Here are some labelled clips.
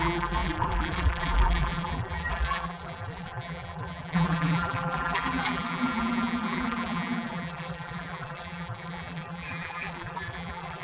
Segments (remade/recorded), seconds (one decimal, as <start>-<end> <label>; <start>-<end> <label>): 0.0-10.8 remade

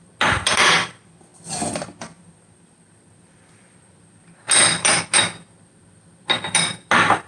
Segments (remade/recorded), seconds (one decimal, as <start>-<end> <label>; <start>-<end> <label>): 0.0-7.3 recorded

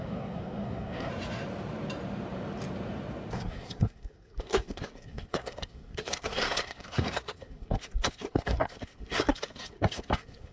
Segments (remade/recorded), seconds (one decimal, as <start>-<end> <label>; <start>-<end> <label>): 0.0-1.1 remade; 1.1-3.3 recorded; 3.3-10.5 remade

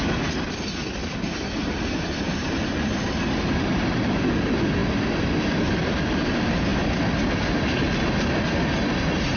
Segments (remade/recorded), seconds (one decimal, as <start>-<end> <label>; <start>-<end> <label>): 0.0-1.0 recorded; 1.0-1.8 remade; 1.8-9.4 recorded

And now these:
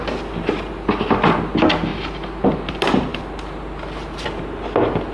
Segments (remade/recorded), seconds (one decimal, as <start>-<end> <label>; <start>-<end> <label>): 0.0-5.1 recorded

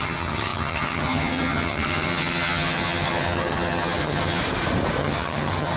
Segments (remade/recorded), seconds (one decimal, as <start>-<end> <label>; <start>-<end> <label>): 0.0-4.4 remade; 4.4-5.0 recorded; 5.0-5.8 remade